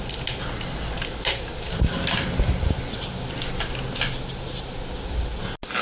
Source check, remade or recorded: recorded